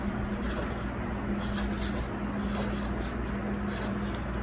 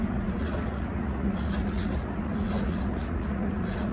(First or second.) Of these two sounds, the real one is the first